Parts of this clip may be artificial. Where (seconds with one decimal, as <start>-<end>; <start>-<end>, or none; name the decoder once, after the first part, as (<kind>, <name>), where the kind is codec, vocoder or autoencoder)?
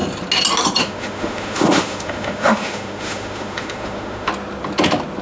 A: 0.8-4.3 (autoencoder, DAC-VAE)